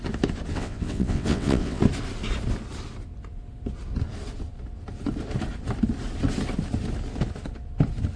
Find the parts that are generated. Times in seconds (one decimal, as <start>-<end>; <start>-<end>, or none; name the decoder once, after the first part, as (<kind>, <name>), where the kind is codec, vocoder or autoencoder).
0.5-1.8 (vocoder, WaveNeXt)

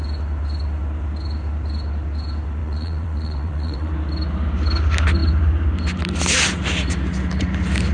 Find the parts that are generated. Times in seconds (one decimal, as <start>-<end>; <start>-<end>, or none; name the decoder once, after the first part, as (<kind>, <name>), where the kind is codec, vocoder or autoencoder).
2.6-3.9 (vocoder, WaveNeXt)

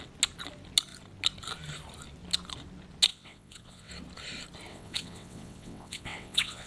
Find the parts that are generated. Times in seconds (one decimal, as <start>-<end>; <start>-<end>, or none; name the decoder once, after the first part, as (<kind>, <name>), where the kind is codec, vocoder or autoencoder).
3.1-3.9 (vocoder, WaveNeXt); 4.7-6.7

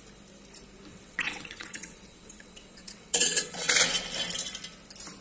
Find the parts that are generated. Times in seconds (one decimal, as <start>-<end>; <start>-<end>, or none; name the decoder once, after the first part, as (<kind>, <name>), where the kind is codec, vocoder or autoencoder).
0.9-3.7 (vocoder, WaveNeXt)

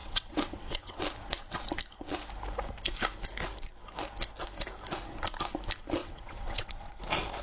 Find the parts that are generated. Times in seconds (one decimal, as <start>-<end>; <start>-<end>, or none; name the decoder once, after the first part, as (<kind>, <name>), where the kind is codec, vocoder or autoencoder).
0.0-1.0 (vocoder, WaveNeXt); 6.0-7.0

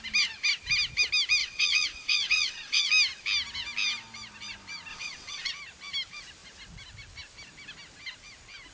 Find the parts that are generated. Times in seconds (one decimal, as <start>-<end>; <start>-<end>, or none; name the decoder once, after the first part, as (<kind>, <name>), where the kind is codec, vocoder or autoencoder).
1.4-2.9 (vocoder, WaveNeXt); 4.9-5.5

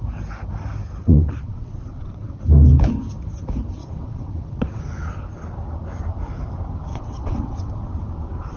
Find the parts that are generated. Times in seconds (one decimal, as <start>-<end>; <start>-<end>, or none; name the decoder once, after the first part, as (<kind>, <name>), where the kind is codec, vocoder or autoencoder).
1.0-2.4 (vocoder, WaveNeXt); 3.8-4.8; 6.9-7.7